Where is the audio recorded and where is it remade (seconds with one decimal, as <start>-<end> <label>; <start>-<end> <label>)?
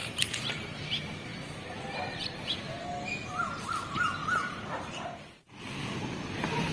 0.0-0.5 remade; 0.5-1.3 recorded; 1.3-2.6 remade; 2.6-4.2 recorded; 4.2-5.6 remade; 5.6-6.7 recorded